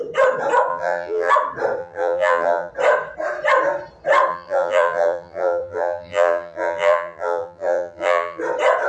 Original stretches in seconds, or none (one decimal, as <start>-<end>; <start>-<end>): 0.0-0.7; 1.3-1.8; 2.7-4.3; 8.4-8.9